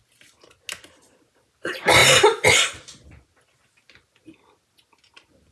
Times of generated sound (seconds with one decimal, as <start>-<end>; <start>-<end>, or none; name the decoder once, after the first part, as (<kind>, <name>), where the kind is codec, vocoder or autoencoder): none